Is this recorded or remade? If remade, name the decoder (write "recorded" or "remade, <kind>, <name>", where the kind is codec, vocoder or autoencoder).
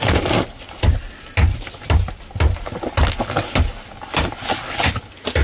recorded